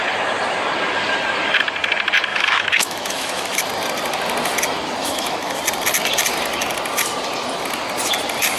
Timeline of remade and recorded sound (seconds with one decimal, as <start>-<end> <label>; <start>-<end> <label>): 0.0-2.3 recorded; 2.3-3.6 remade; 3.6-5.0 recorded; 5.0-5.6 remade; 5.6-8.6 recorded